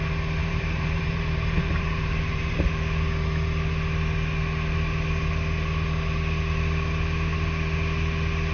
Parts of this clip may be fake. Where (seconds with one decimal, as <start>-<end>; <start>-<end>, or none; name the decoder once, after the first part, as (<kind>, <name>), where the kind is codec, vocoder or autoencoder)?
0.4-2.6 (vocoder, BigVGAN v2)